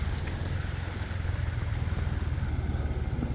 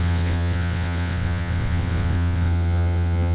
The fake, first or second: second